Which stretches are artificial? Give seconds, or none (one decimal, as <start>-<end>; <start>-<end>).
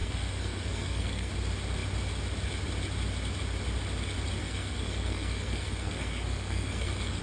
0.0-1.3; 4.4-7.2